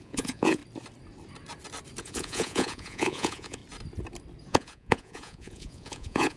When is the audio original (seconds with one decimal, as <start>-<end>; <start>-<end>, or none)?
0.6-2.0; 3.6-4.5